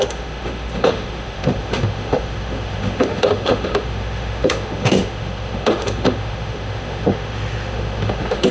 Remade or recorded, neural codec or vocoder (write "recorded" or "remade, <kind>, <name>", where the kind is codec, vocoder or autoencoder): remade, autoencoder, DAC-VAE